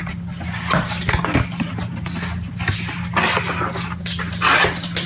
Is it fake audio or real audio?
real